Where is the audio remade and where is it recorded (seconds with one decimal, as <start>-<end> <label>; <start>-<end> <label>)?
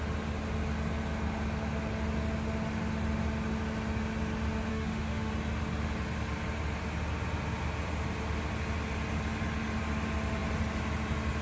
0.0-4.7 recorded; 4.7-5.3 remade; 5.3-11.4 recorded